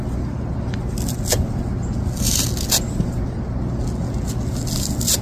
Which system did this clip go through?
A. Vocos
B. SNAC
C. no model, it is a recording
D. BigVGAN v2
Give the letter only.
C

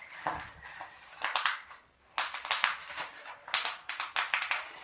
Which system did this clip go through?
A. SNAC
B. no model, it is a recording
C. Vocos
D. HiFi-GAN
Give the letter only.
B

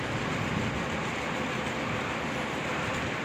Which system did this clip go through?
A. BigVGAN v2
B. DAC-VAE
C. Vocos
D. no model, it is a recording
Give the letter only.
D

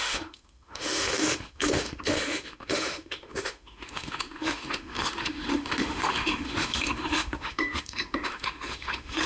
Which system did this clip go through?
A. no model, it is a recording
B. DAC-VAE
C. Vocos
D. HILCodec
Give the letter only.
B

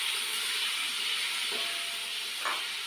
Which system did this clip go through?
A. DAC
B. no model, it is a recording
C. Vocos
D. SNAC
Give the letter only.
B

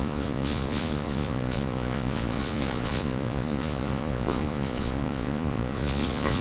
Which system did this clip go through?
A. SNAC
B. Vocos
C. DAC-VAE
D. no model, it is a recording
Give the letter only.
B